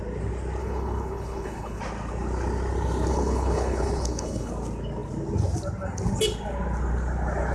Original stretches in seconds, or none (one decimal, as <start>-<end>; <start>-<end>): 0.0-0.6; 1.8-3.1; 4.5-7.5